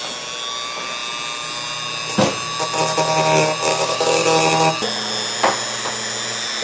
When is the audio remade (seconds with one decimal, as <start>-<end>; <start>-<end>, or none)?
3.7-4.2